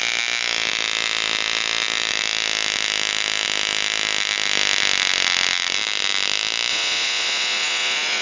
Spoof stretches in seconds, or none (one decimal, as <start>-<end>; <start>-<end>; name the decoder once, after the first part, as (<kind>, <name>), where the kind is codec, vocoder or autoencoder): 6.7-8.2 (vocoder, Vocos)